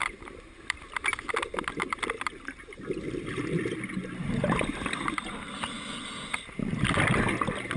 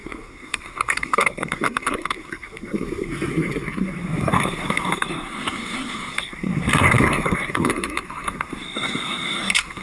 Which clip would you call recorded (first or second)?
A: first